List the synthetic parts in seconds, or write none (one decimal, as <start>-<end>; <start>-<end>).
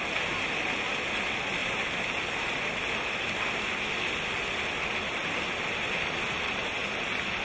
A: 6.8-7.4